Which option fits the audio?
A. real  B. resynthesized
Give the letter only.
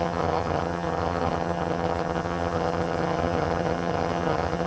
B